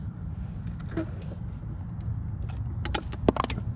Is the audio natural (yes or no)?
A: yes